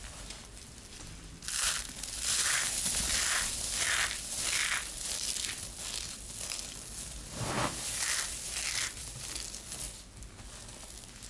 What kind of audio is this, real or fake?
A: real